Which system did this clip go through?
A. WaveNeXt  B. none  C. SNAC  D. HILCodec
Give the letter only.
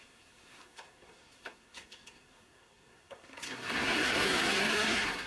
C